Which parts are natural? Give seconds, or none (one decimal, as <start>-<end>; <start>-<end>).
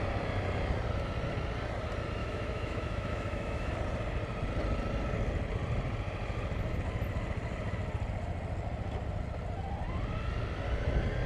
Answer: 0.0-2.2; 3.7-11.3